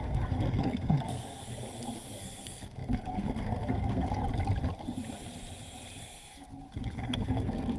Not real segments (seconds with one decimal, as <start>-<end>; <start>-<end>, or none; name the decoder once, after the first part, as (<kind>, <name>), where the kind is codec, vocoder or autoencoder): 0.0-1.4 (codec, SNAC); 2.2-4.2; 6.0-7.8